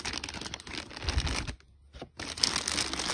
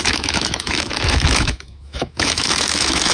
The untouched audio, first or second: first